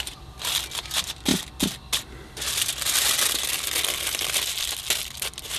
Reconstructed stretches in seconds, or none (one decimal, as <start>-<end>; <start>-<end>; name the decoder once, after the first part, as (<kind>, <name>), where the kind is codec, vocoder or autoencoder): none